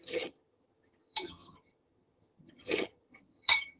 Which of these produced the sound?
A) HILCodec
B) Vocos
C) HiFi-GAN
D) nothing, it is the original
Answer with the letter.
C